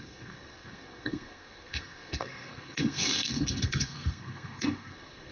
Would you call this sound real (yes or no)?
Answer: no